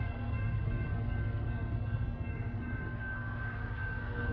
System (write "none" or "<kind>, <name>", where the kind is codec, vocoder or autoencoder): codec, SNAC